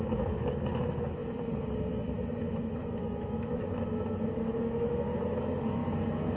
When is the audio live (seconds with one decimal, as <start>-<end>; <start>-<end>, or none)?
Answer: 1.2-2.4; 5.8-6.4